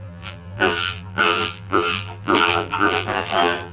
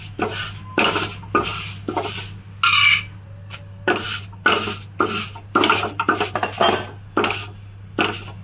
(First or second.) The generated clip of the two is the first